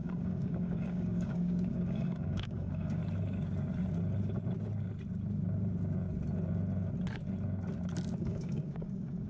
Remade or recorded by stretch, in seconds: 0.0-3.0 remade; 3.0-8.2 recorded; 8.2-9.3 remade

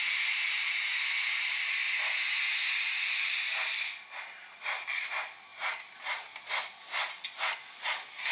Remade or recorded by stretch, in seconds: 0.0-8.3 recorded

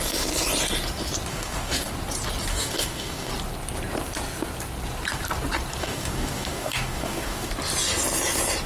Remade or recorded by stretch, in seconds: 0.0-1.3 recorded; 1.3-1.9 remade; 1.9-2.5 recorded; 2.5-3.3 remade; 3.3-5.8 recorded; 5.8-7.5 remade; 7.5-8.7 recorded

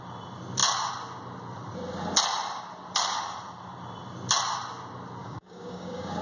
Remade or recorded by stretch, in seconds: 0.0-5.2 recorded; 5.2-6.2 remade

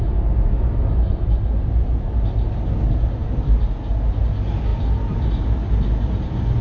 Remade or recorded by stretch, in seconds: 0.0-6.6 recorded

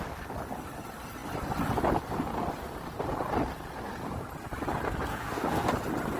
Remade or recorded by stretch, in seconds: 0.0-5.1 recorded; 5.1-5.7 remade; 5.7-6.2 recorded